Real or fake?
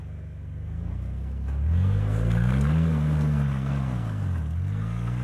fake